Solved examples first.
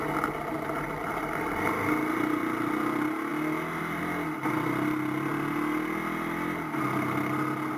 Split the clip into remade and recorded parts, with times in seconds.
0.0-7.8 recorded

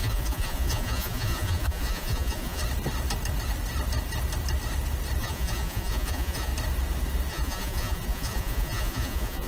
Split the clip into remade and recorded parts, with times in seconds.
0.0-2.6 remade; 2.6-5.2 recorded; 5.2-6.5 remade; 6.5-7.3 recorded; 7.3-9.5 remade

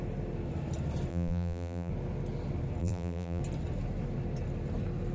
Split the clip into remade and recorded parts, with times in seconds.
0.0-1.1 recorded; 1.1-1.9 remade; 1.9-2.8 recorded; 2.8-3.4 remade; 3.4-5.1 recorded

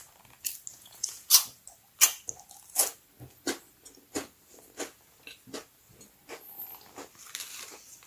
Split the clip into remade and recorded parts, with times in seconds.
0.0-0.7 recorded; 0.7-1.3 remade; 1.3-8.1 recorded

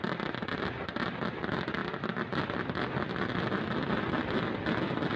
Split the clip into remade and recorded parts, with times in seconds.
0.0-5.2 recorded

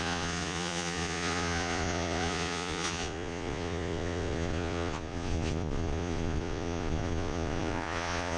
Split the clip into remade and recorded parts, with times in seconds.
0.0-8.4 remade

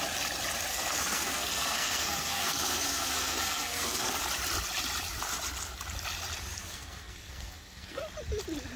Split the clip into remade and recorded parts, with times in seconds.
0.0-0.7 recorded; 0.7-4.1 remade; 4.1-6.6 recorded; 6.6-8.0 remade; 8.0-8.8 recorded